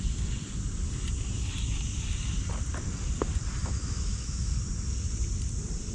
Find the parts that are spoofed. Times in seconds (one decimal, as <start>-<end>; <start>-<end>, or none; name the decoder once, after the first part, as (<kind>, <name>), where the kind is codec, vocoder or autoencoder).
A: 3.6-4.5 (autoencoder, DAC-VAE)